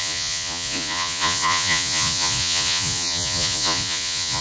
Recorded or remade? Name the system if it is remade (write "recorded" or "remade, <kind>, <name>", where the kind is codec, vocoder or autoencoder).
remade, vocoder, Vocos